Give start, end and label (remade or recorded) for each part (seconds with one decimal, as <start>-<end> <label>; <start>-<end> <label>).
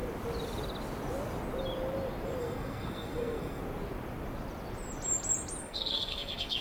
0.0-2.4 recorded; 2.4-3.6 remade; 3.6-5.6 recorded; 5.6-6.6 remade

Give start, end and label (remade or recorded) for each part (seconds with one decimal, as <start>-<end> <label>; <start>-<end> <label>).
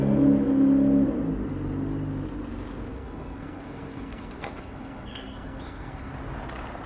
0.0-2.9 recorded; 2.9-6.1 remade; 6.1-6.9 recorded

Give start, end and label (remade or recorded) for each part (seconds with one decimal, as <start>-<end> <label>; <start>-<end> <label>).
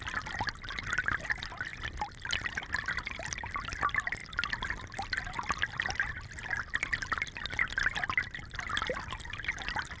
0.0-10.0 recorded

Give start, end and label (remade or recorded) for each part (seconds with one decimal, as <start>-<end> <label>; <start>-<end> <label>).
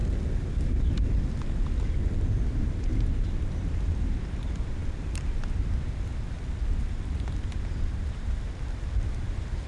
0.0-9.7 recorded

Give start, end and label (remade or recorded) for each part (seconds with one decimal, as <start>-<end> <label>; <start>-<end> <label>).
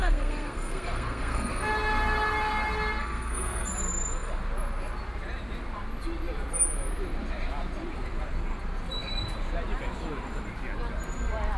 0.0-1.5 remade; 1.5-3.0 recorded; 3.0-3.7 remade; 3.7-11.6 recorded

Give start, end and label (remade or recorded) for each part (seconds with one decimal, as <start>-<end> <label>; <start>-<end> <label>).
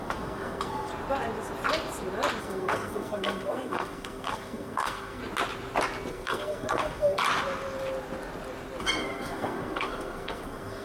0.0-0.9 remade; 0.9-2.4 recorded; 2.4-5.2 remade; 5.2-6.1 recorded; 6.1-7.2 remade; 7.2-8.8 recorded; 8.8-10.8 remade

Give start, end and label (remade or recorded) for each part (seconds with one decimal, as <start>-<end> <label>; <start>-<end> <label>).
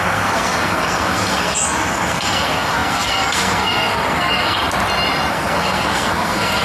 0.0-4.6 remade; 4.6-5.3 recorded; 5.3-6.6 remade